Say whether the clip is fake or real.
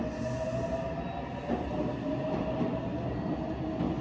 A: real